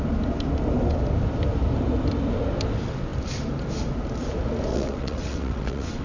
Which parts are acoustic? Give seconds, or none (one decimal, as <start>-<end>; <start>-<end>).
0.0-4.7